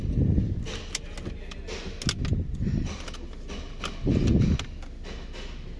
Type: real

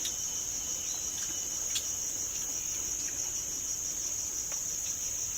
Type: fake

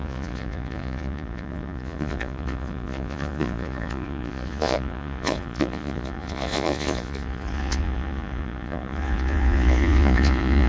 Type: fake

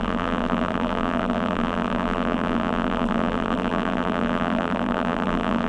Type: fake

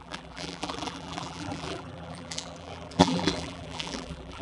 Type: fake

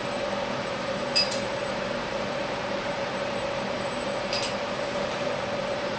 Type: fake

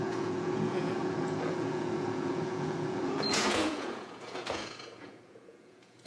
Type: fake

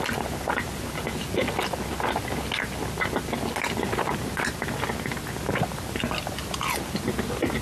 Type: real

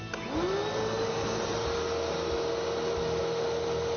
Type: real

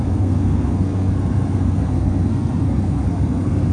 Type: fake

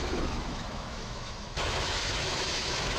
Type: fake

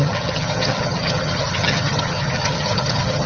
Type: fake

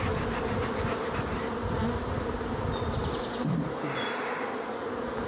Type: real